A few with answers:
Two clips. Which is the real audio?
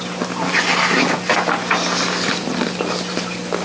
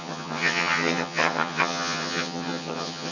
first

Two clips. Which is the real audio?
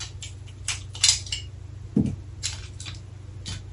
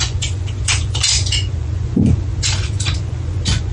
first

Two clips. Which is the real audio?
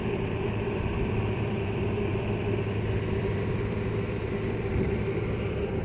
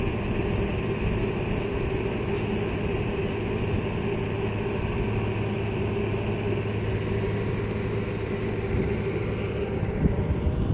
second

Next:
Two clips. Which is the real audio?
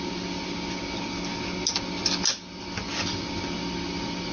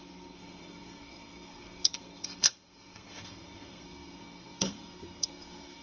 first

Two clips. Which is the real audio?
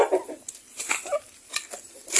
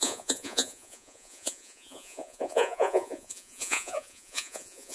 first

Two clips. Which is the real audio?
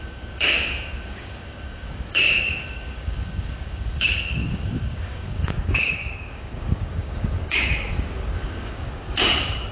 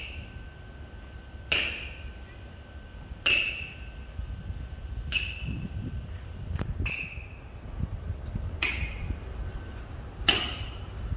second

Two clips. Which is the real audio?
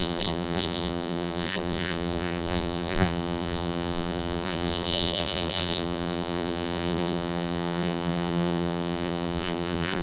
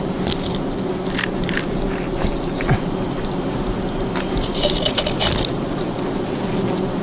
second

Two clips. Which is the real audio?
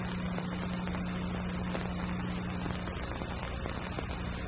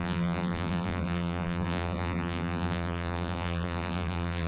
first